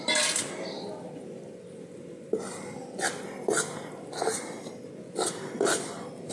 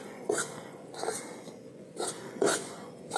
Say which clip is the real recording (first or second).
first